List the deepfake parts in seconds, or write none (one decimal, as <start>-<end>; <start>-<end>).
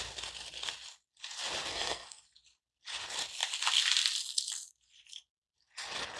1.7-2.2